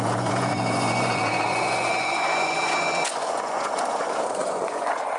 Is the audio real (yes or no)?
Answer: no